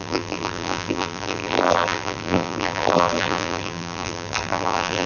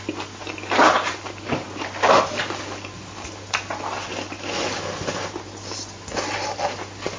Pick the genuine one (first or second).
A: second